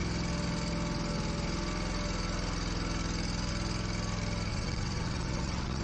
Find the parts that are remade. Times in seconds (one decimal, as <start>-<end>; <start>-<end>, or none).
4.5-5.8